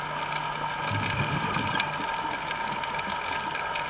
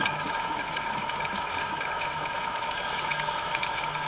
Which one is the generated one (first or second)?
second